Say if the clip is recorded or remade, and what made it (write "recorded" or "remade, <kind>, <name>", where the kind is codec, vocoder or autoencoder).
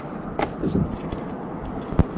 recorded